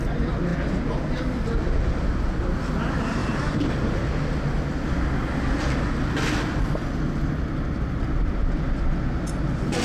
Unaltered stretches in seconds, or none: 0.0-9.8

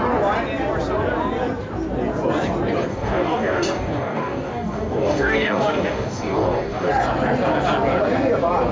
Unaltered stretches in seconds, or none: 0.0-2.9; 6.9-8.7

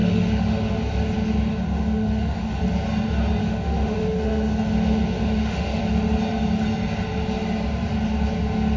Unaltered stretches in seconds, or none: 0.7-1.5; 2.6-3.4; 5.8-8.8

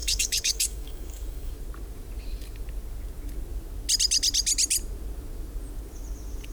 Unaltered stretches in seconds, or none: 1.5-6.5

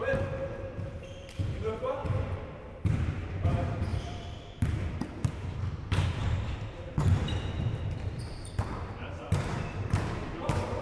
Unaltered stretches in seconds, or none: none